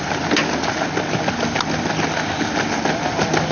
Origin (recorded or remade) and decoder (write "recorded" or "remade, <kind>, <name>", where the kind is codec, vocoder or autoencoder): recorded